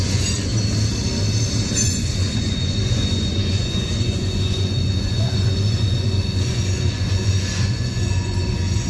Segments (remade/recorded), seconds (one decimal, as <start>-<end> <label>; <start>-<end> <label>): 0.0-0.5 remade; 0.5-1.8 recorded; 1.8-8.9 remade